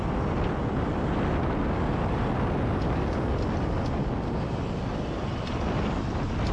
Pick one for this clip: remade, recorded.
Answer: recorded